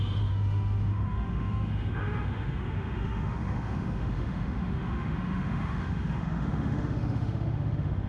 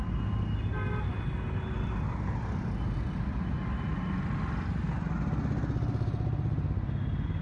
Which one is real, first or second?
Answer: second